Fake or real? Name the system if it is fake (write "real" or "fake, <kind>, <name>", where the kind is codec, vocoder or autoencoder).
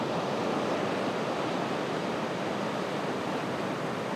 real